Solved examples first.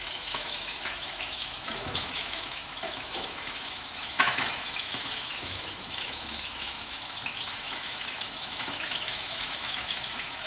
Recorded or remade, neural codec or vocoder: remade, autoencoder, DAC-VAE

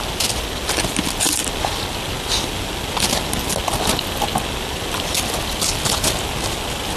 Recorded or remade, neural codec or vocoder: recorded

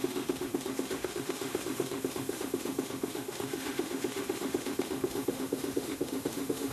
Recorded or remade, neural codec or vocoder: remade, autoencoder, DAC-VAE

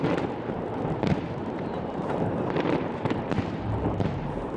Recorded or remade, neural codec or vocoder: remade, vocoder, BigVGAN v2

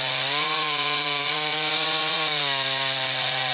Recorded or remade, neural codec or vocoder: remade, vocoder, Vocos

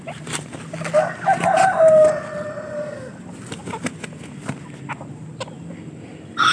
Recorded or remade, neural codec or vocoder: recorded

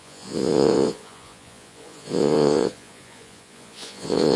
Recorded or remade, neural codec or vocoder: remade, vocoder, Vocos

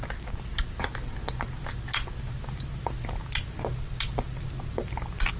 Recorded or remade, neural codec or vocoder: recorded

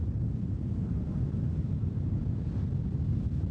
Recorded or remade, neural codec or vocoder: recorded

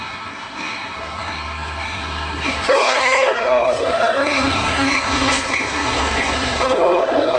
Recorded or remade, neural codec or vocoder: remade, codec, SNAC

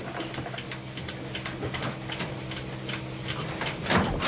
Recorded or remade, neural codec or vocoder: recorded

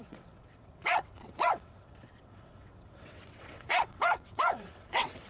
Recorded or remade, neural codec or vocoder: remade, vocoder, WaveNeXt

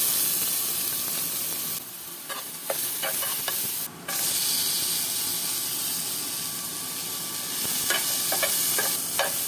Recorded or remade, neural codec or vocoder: recorded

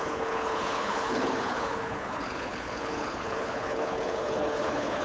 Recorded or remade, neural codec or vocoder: remade, codec, HILCodec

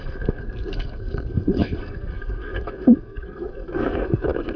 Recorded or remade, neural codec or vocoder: remade, codec, SNAC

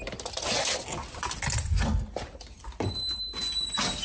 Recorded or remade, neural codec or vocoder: recorded